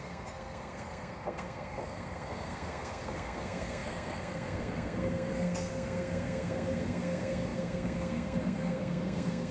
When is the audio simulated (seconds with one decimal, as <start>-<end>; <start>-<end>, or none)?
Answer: 0.0-9.5